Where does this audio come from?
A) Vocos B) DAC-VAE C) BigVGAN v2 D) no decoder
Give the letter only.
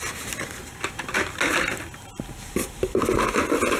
D